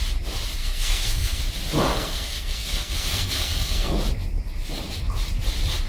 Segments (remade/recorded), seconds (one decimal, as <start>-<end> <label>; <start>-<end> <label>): 0.0-0.6 recorded; 0.6-1.4 remade; 1.4-1.9 recorded; 1.9-4.0 remade; 4.0-5.9 recorded